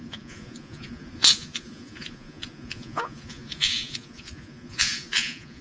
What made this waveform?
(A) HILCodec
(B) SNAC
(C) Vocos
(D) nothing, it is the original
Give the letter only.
C